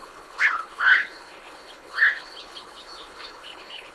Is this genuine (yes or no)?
no